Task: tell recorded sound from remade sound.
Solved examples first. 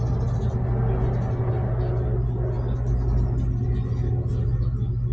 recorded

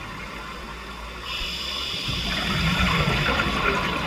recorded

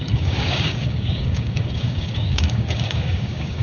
remade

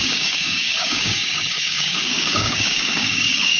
remade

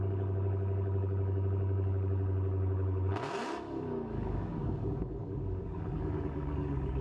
remade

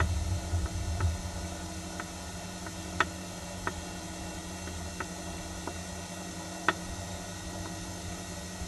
recorded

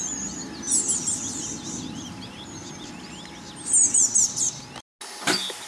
recorded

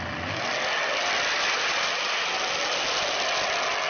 recorded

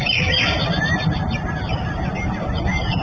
recorded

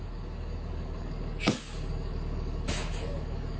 remade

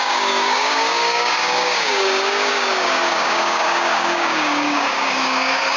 remade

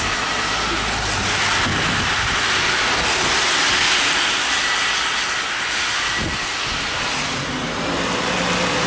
recorded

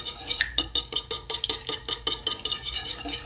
remade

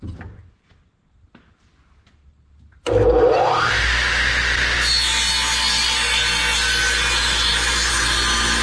recorded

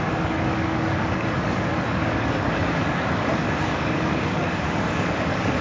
remade